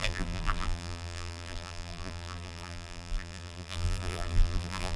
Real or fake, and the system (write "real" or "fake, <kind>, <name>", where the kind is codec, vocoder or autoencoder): fake, vocoder, BigVGAN v2